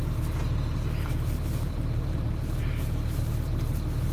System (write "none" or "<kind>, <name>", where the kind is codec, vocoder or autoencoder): none